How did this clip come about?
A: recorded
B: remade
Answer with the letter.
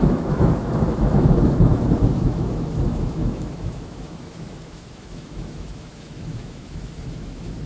B